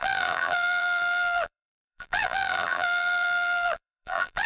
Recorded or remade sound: remade